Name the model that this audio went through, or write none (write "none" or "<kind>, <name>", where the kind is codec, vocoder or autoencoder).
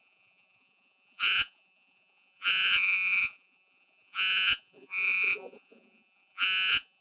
vocoder, Vocos